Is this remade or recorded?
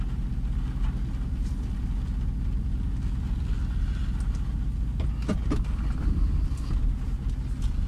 recorded